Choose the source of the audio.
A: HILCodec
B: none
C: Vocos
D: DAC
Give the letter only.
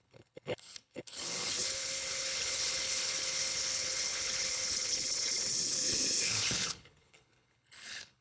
A